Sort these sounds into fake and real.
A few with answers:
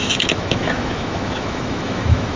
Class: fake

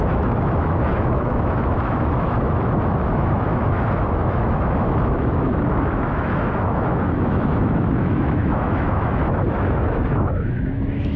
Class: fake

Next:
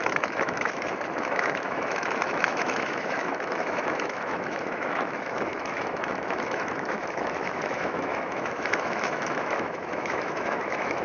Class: fake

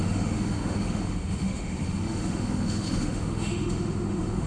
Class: fake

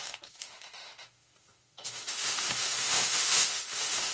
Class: fake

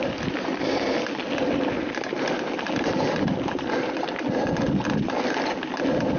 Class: real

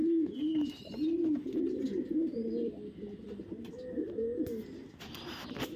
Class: real